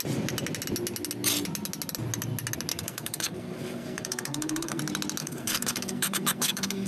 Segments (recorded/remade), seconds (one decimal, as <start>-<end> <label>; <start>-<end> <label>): 0.0-2.7 recorded; 2.7-4.8 remade; 4.8-5.2 recorded; 5.2-6.9 remade